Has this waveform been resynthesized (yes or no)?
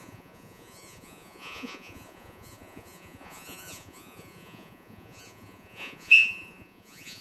yes